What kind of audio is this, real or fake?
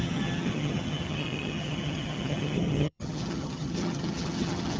fake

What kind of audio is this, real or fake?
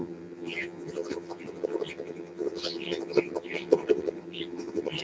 fake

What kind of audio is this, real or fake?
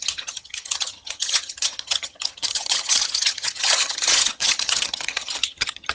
fake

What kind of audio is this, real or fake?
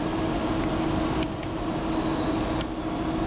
real